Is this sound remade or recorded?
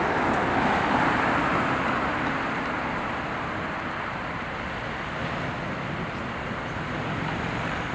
recorded